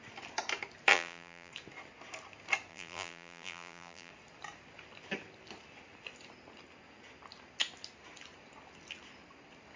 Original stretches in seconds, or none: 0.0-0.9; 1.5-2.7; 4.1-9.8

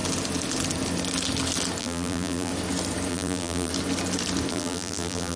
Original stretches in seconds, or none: 0.0-1.8; 2.5-3.1; 3.7-4.5

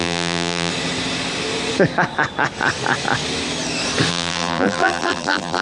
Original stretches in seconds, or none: 0.7-4.1